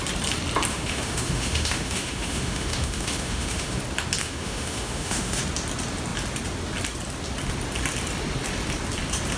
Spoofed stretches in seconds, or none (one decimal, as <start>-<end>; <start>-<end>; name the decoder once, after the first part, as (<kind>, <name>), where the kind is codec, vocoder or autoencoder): 0.7-3.8 (autoencoder, DAC-VAE); 4.2-5.4